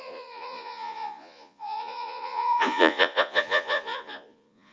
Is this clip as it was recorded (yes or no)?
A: no